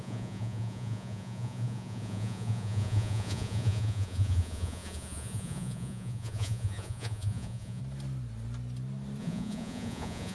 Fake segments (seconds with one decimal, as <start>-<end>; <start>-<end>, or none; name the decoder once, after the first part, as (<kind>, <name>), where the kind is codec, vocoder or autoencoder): 0.0-7.8 (vocoder, Vocos); 9.2-10.3